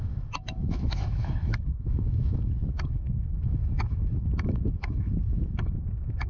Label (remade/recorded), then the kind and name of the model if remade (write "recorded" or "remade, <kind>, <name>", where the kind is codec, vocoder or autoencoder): remade, autoencoder, DAC-VAE